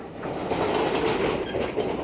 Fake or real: real